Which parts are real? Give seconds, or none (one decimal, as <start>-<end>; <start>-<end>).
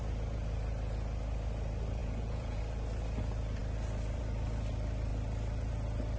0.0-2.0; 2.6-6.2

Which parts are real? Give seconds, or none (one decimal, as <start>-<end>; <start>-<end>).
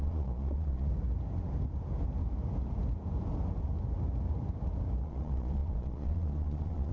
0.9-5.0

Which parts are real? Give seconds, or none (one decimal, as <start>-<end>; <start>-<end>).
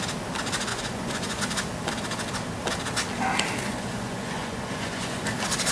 0.0-0.7; 1.4-3.6; 5.2-5.7